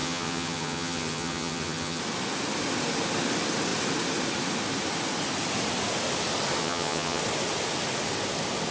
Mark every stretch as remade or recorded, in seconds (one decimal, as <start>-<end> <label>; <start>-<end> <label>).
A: 0.0-2.0 remade; 2.0-6.6 recorded; 6.6-7.2 remade; 7.2-8.7 recorded